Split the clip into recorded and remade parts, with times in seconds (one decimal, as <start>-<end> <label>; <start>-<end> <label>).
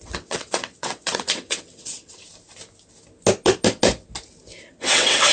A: 0.0-2.2 remade; 2.2-4.7 recorded; 4.7-5.3 remade